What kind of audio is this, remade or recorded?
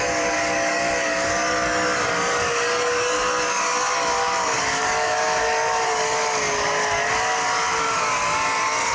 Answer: remade